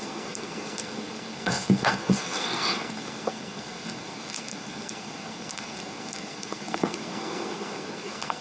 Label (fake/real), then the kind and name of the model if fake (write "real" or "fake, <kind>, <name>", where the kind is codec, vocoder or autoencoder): fake, codec, SNAC